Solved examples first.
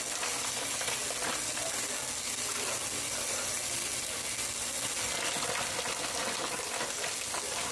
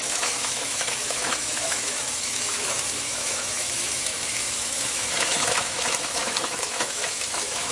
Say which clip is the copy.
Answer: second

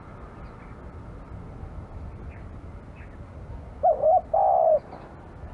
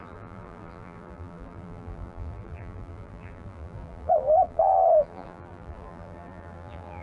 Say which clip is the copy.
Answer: second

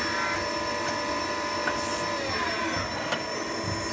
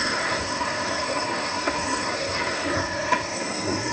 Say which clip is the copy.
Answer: second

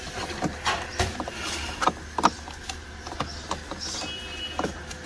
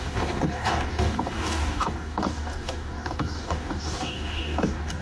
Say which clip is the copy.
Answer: second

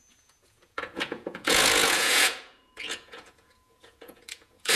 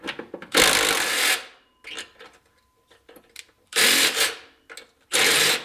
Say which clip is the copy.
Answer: first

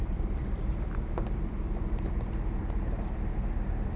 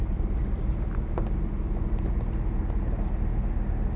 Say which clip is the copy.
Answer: first